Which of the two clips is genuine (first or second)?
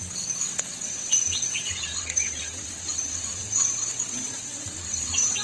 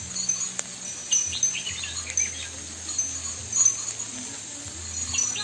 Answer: second